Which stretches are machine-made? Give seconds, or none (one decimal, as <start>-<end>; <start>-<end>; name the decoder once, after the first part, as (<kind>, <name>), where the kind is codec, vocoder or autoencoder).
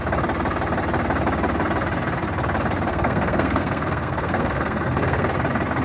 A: 2.9-5.3 (codec, SNAC)